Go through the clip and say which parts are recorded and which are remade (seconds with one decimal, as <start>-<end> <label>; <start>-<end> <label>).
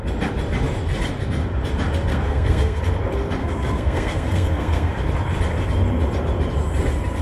0.0-2.1 recorded; 2.1-2.8 remade; 2.8-3.4 recorded; 3.4-4.9 remade; 4.9-7.2 recorded